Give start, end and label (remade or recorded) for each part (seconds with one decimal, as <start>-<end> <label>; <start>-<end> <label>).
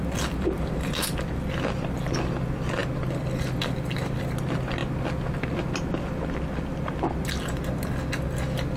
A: 0.0-8.8 recorded